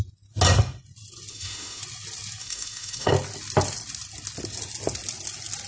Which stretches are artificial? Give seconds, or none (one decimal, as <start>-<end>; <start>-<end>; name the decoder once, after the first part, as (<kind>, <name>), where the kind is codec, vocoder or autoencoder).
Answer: 1.3-1.8 (autoencoder, DAC-VAE); 2.4-3.1